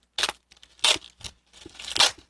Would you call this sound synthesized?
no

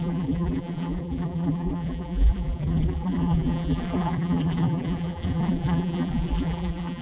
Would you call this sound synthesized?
yes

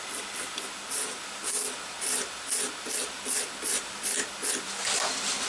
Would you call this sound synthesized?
no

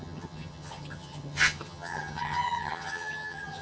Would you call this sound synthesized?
yes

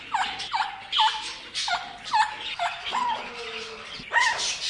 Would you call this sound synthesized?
no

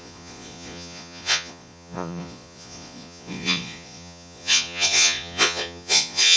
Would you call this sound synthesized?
yes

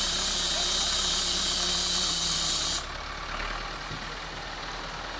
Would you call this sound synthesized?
no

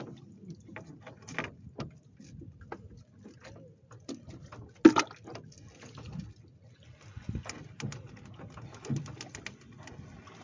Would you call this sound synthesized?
no